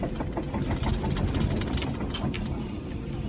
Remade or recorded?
recorded